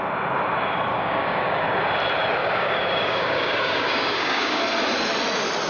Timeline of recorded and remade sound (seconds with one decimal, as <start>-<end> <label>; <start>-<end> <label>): 0.0-0.9 recorded; 0.9-1.6 remade; 1.6-2.4 recorded; 2.4-4.6 remade; 4.6-5.7 recorded